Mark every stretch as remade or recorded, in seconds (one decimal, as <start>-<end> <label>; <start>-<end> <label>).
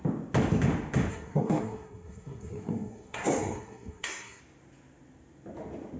0.0-1.1 recorded; 1.1-4.4 remade; 4.4-6.0 recorded